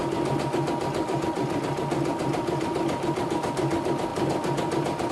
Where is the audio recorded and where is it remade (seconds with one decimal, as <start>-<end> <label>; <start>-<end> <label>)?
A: 0.0-2.1 recorded; 2.1-3.4 remade; 3.4-4.1 recorded; 4.1-5.1 remade